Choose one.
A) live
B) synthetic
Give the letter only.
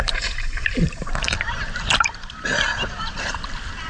B